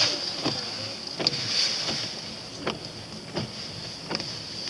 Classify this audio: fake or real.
real